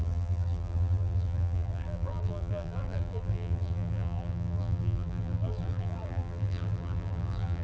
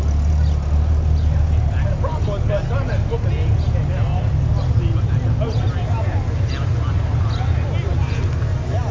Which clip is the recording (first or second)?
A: second